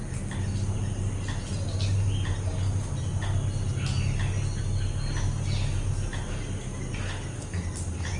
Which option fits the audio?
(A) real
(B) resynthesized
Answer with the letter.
A